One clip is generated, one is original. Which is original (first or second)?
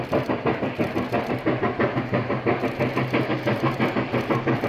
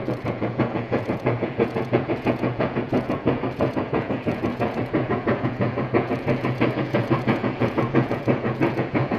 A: first